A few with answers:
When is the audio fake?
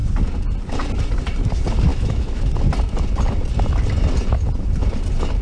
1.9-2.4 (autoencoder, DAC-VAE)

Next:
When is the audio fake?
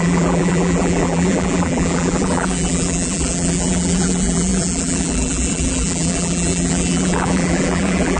0.0-8.2 (vocoder, BigVGAN v2)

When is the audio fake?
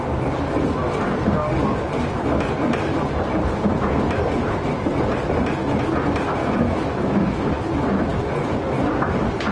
6.4-7.4 (autoencoder, DAC-VAE)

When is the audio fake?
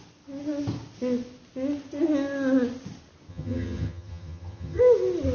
3.3-4.8 (vocoder, HiFi-GAN)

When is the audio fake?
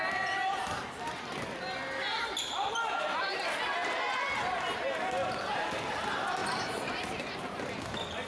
2.5-3.4 (vocoder, BigVGAN v2); 6.4-7.2